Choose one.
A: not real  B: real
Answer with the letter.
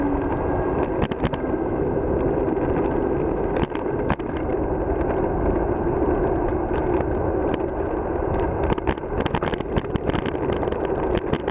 B